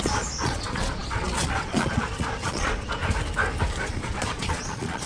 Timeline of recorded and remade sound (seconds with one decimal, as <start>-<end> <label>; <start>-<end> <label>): 0.0-3.0 remade; 3.0-3.8 recorded; 3.8-5.1 remade